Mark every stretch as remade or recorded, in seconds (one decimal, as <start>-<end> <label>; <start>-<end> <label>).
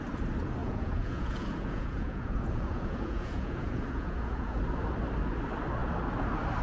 0.0-0.6 recorded; 0.6-4.6 remade; 4.6-6.6 recorded